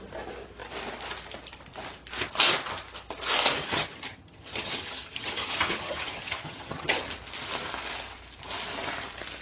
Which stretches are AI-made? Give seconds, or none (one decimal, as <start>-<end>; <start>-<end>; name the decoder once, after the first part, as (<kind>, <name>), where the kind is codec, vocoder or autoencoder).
3.6-7.0 (vocoder, HiFi-GAN)